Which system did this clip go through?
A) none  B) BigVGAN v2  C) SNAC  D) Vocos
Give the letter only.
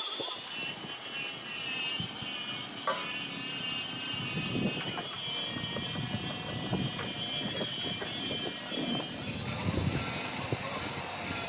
A